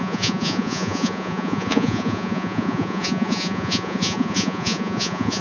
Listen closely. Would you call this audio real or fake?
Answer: fake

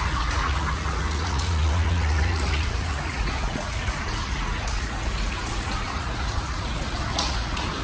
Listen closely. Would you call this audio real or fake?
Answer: fake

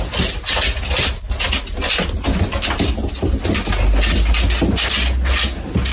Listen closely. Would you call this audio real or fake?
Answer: real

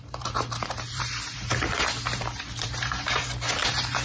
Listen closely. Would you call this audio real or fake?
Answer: fake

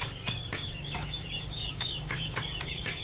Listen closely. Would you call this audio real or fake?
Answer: fake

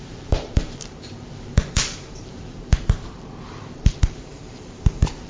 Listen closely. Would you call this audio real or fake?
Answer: fake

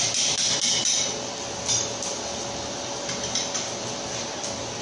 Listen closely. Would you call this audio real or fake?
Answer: real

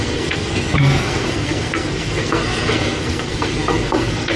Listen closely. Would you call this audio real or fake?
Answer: fake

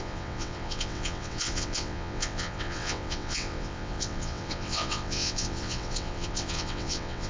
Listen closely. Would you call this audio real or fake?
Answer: fake